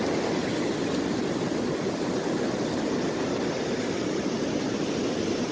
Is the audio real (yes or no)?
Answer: yes